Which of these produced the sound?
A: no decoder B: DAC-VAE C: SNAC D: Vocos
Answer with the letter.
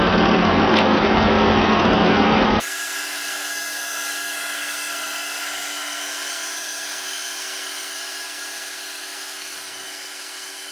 C